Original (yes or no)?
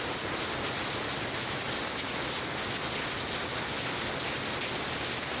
yes